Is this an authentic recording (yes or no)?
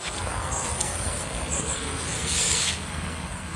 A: no